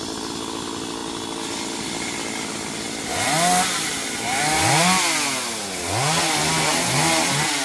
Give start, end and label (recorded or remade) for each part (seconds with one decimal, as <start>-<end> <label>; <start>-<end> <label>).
0.0-7.6 recorded